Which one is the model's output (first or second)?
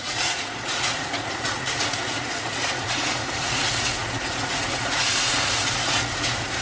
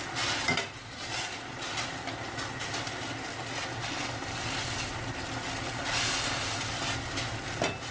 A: first